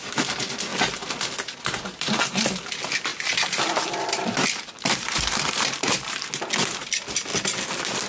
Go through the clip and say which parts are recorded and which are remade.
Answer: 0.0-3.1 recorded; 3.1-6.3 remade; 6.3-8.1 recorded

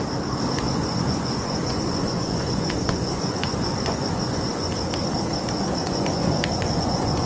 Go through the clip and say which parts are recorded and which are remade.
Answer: 0.0-0.8 recorded; 0.8-4.7 remade; 4.7-5.4 recorded; 5.4-7.3 remade

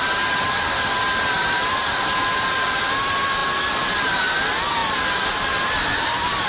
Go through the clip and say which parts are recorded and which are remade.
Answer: 0.0-4.8 recorded; 4.8-6.5 remade

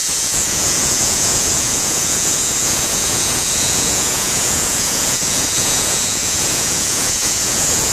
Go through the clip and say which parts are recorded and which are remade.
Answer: 0.0-7.9 remade

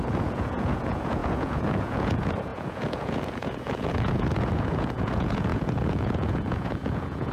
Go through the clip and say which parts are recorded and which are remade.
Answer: 0.0-7.3 remade

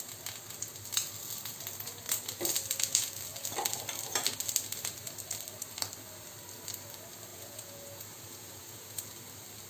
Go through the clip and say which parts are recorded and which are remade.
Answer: 0.0-7.3 recorded; 7.3-9.1 remade; 9.1-9.7 recorded